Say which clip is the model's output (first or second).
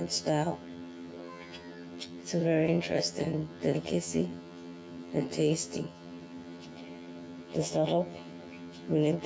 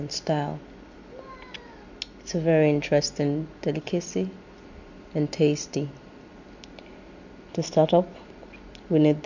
first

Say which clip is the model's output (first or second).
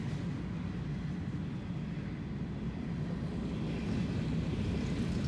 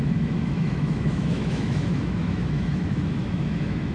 second